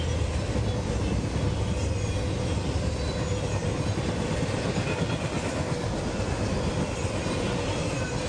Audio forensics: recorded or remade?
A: recorded